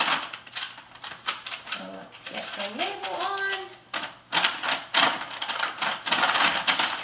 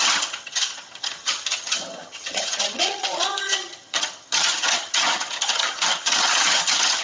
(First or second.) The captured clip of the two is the first